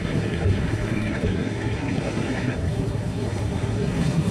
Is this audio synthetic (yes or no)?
yes